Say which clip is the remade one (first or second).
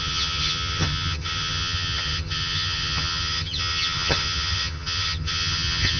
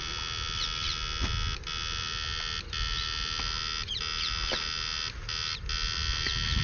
first